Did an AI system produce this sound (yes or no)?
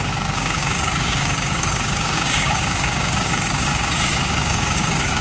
yes